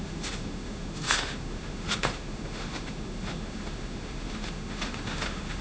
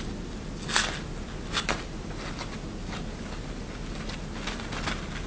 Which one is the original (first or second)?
second